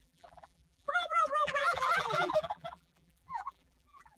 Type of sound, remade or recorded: remade